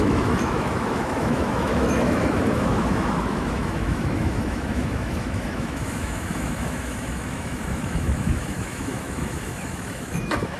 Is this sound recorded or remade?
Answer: remade